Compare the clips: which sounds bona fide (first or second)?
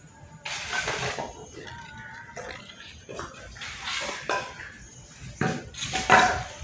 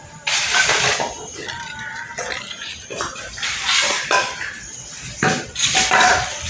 first